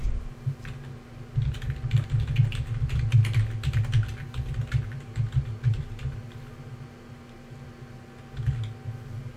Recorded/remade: recorded